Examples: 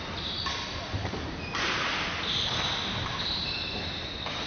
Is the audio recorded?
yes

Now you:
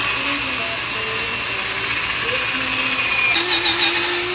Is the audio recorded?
yes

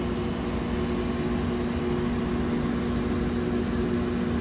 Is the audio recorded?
yes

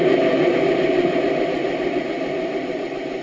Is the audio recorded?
yes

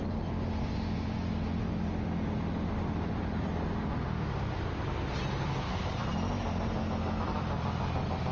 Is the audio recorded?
yes